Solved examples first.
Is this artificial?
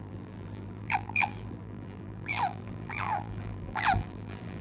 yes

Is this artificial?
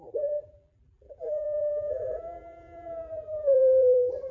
yes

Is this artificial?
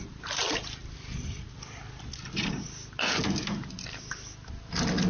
no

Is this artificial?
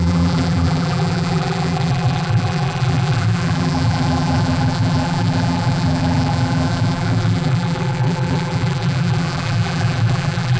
yes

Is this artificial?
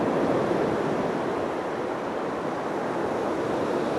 no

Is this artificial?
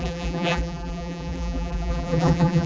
yes